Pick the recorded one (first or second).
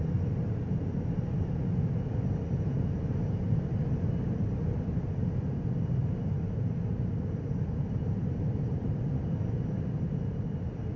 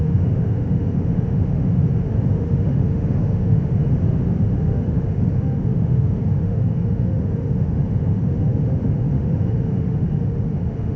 first